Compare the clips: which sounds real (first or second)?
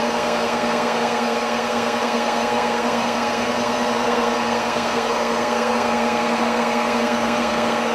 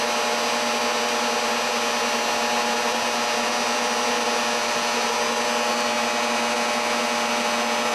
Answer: second